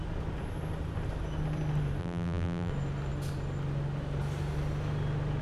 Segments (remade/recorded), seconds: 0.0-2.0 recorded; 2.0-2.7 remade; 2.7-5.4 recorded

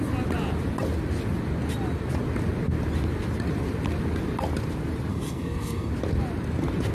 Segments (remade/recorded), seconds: 0.0-5.1 recorded; 5.1-5.9 remade; 5.9-6.9 recorded

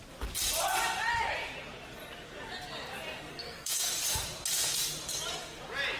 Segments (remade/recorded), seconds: 0.0-3.3 recorded; 3.3-3.9 remade; 3.9-6.0 recorded